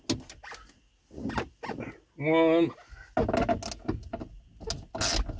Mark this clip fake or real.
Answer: real